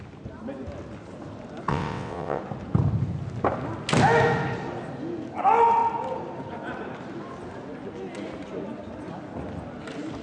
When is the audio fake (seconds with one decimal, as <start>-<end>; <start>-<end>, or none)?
1.7-2.4